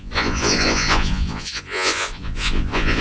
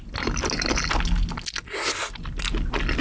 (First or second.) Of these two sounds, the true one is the second